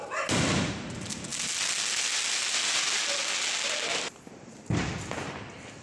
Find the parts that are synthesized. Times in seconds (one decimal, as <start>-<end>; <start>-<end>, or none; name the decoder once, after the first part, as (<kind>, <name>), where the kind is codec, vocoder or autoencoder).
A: 0.0-1.3 (vocoder, BigVGAN v2); 4.3-5.8